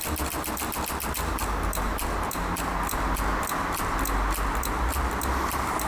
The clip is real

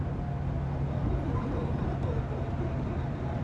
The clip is real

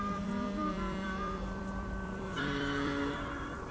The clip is fake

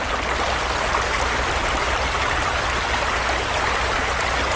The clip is real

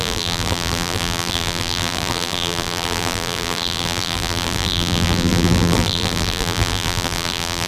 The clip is fake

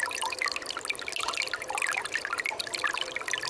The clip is real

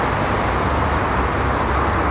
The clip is real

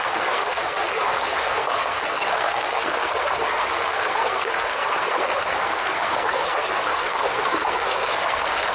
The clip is fake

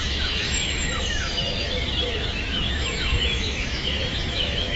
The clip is fake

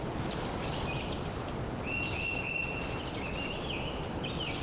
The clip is real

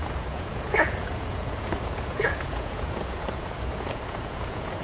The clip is fake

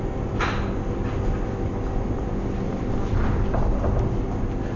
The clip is real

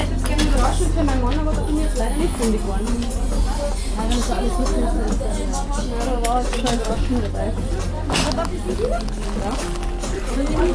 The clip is real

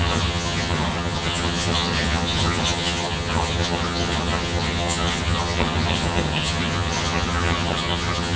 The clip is fake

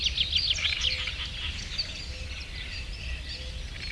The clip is real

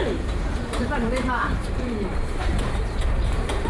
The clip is fake